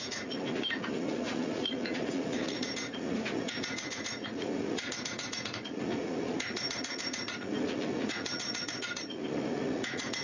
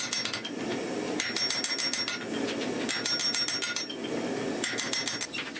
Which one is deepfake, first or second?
first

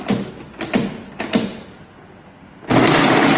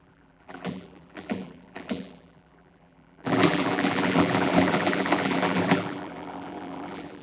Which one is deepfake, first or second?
second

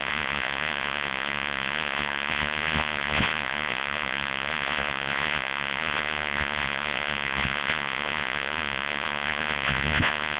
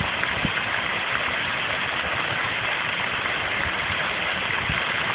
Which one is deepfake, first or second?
first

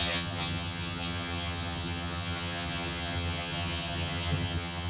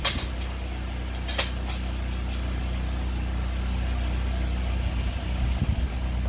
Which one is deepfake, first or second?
first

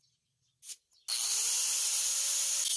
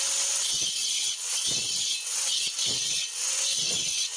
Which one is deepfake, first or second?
second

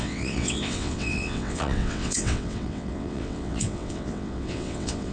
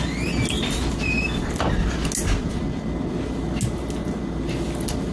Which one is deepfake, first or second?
first